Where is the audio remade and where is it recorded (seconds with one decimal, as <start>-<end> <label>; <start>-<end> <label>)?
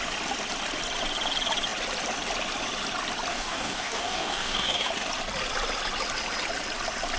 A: 0.0-3.3 recorded; 3.3-4.9 remade; 4.9-7.2 recorded